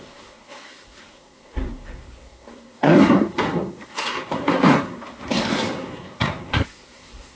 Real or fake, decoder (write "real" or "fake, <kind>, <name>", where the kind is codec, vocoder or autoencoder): fake, codec, SNAC